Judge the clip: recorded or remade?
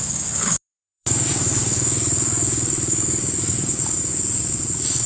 remade